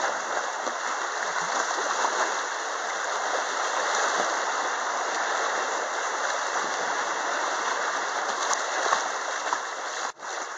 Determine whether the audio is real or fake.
real